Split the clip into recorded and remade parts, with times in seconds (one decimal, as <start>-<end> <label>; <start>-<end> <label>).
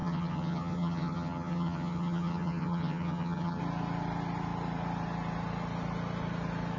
0.0-3.6 remade; 3.6-6.8 recorded